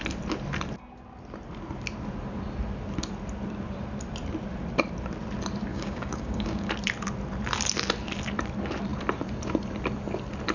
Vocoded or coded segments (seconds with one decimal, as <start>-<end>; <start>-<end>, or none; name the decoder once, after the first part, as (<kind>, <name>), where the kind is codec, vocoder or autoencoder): 5.7-6.7 (codec, DAC)